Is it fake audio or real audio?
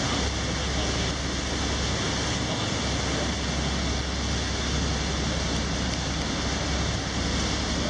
real